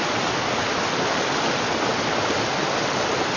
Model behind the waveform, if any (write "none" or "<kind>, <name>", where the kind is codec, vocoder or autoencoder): none